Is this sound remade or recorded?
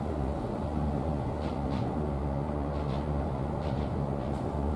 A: remade